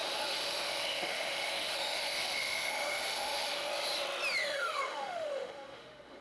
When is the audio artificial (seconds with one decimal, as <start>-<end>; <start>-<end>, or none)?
0.0-3.7; 4.4-6.2